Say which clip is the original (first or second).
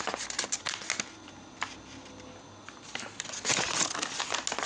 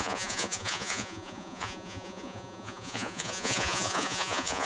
first